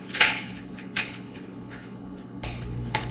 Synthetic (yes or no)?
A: yes